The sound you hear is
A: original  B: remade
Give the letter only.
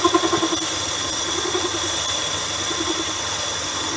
A